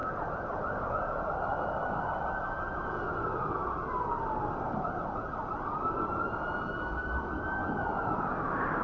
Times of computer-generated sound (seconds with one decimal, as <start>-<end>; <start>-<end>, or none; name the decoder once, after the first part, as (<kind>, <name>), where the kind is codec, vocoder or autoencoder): none